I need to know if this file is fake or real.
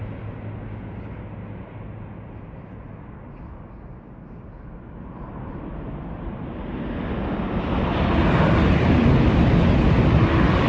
real